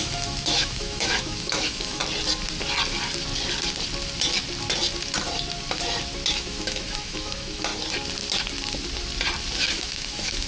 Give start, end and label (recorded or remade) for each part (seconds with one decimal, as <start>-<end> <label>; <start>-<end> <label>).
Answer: 0.0-2.0 remade; 2.0-6.3 recorded; 6.3-7.7 remade; 7.7-9.6 recorded; 9.6-10.5 remade